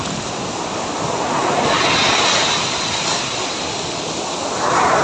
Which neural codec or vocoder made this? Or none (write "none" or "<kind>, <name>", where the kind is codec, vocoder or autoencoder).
none